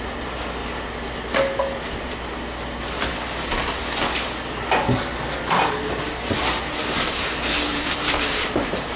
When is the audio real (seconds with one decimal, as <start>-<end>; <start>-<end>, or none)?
0.0-7.7